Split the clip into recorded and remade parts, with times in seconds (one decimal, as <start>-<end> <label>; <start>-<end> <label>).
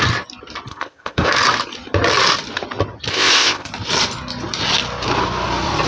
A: 0.0-0.7 recorded; 0.7-1.3 remade; 1.3-3.1 recorded; 3.1-3.7 remade; 3.7-5.9 recorded